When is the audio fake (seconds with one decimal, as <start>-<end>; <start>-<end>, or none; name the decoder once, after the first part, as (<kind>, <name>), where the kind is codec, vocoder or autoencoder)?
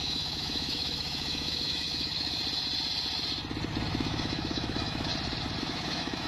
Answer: 0.0-2.4 (autoencoder, DAC-VAE); 3.9-5.1; 5.6-6.3